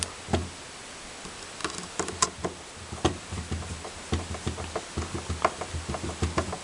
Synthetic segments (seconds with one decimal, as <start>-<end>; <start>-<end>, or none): none